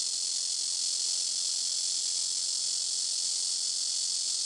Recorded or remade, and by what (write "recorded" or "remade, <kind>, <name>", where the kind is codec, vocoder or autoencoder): recorded